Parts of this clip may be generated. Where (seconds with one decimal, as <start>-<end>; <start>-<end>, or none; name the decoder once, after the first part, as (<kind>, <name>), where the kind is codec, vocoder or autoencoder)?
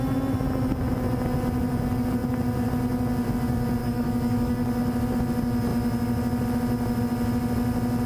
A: 3.8-4.8 (codec, DAC)